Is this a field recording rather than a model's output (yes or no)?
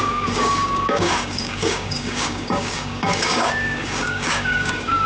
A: no